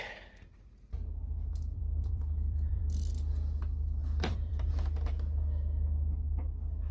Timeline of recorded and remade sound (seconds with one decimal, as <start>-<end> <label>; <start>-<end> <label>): 0.0-1.7 recorded; 1.7-2.8 remade; 2.8-4.0 recorded; 4.0-4.7 remade; 4.7-6.9 recorded